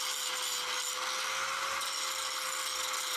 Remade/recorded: recorded